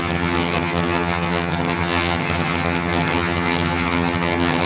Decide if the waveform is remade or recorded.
remade